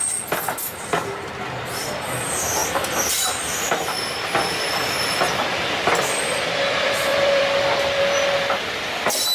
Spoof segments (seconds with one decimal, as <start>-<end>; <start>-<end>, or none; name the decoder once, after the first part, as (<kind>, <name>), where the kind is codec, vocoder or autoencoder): 7.1-7.7 (vocoder, BigVGAN v2)